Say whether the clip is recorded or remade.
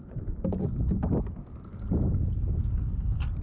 recorded